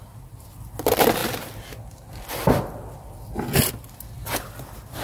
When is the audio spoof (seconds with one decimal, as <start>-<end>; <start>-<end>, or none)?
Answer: none